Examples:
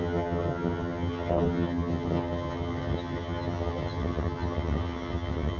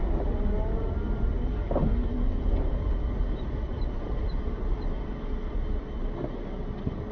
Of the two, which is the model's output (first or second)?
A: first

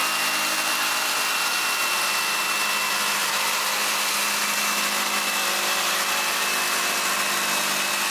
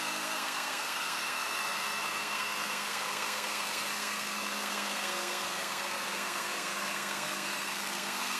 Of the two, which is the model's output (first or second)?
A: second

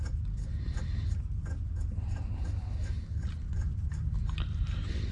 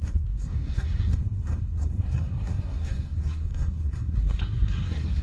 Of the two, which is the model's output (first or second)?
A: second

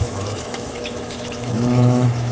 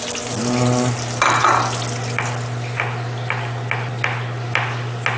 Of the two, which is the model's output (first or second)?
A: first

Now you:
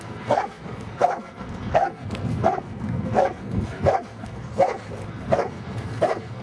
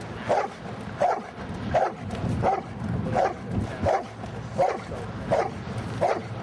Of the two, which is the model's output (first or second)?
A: first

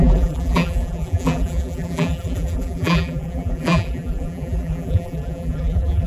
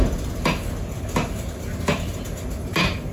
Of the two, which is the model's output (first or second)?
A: first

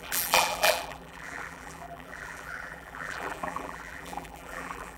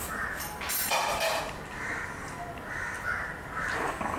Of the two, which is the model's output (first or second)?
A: first